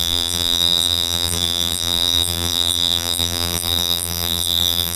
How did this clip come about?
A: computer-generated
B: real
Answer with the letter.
A